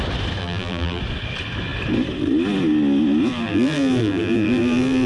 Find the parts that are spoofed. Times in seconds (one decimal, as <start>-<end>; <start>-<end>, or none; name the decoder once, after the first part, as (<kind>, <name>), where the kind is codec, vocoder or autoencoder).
0.4-1.0 (vocoder, BigVGAN v2); 3.3-5.1